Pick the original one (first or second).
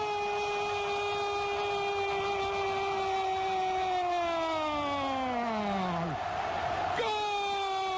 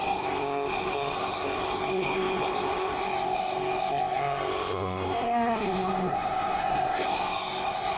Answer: first